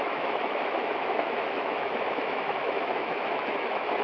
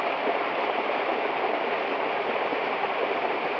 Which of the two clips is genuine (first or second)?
second